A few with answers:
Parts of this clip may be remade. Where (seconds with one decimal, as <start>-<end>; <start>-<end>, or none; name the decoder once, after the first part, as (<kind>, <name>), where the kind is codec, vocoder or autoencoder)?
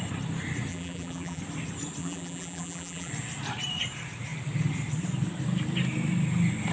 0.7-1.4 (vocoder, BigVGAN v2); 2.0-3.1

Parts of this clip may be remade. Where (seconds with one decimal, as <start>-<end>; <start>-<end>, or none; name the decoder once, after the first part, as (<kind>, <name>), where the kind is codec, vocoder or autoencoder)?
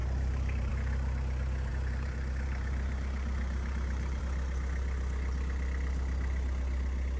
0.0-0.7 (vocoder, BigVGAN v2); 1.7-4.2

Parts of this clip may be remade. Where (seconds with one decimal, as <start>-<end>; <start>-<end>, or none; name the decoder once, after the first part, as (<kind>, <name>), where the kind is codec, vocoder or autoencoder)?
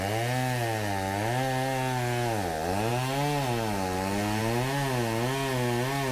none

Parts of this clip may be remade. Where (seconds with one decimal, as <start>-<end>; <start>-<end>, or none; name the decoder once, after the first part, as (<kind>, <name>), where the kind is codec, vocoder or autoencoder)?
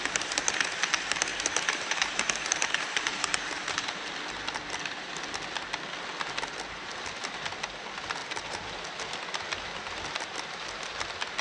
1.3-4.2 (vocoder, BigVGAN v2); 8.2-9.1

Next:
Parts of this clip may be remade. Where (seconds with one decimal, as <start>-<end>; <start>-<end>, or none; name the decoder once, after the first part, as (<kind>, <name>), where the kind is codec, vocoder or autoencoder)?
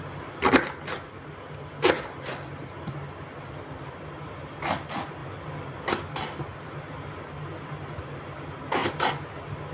none